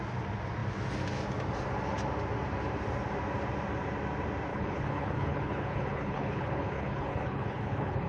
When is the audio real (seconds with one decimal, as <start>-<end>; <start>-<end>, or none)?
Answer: 0.0-4.5